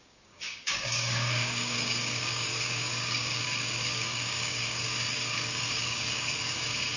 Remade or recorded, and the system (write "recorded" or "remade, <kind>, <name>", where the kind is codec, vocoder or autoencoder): remade, codec, DAC